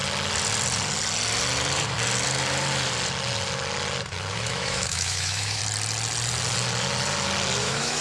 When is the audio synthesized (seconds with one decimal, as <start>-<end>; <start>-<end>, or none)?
4.3-5.6; 7.6-8.0